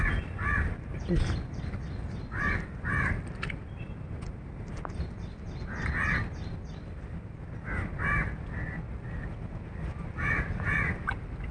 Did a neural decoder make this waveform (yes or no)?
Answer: no